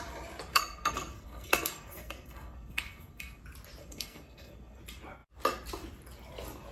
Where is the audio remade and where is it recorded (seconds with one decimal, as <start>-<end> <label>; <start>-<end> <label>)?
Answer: 0.0-0.5 recorded; 0.5-3.4 remade; 3.4-3.8 recorded; 3.8-4.8 remade; 4.8-6.7 recorded